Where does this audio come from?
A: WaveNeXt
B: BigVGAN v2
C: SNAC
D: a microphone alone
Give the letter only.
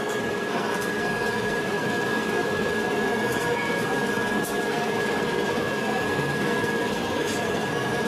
C